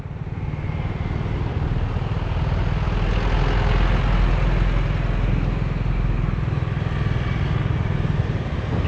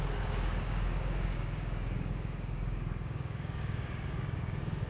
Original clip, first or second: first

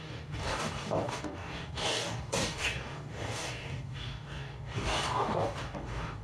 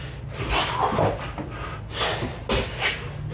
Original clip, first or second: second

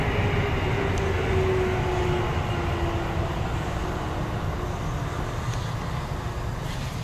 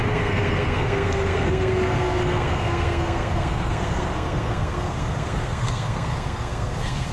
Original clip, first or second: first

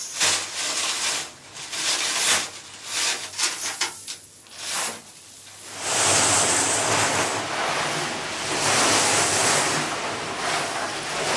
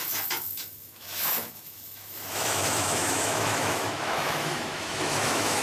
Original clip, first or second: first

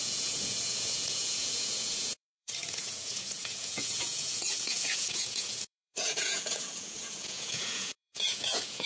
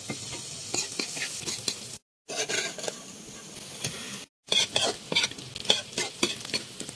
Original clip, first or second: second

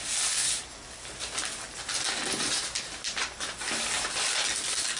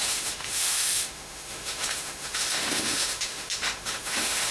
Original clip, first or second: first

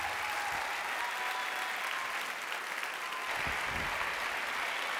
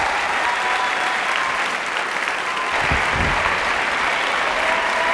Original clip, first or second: first